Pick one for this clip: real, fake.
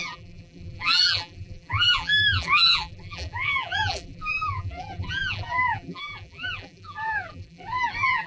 fake